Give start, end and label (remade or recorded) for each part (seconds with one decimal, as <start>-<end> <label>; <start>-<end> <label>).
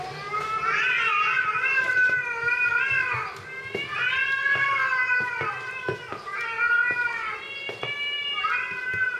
0.0-9.2 recorded